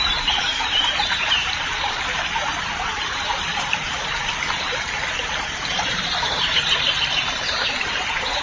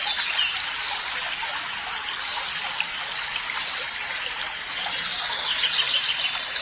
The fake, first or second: first